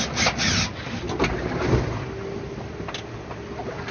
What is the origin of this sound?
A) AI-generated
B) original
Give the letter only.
B